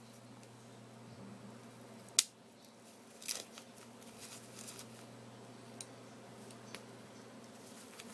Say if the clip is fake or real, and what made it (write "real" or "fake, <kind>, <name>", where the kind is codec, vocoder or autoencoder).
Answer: real